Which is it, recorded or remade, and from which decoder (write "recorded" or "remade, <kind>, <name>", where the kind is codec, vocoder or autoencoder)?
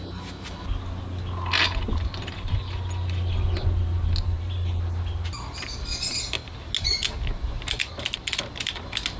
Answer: recorded